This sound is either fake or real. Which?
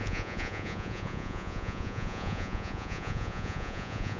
fake